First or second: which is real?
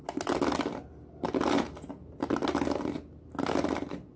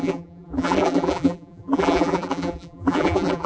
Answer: first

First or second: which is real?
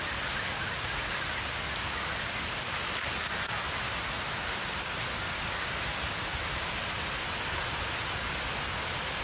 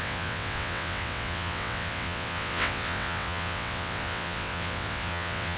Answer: first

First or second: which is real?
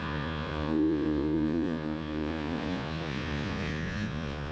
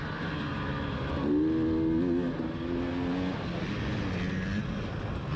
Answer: second